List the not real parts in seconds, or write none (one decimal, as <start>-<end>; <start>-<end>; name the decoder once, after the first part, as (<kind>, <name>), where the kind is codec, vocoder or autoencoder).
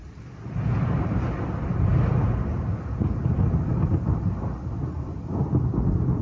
none